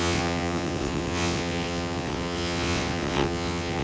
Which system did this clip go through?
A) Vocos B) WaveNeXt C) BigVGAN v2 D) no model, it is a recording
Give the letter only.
B